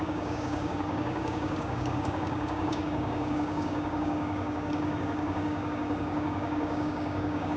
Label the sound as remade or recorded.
remade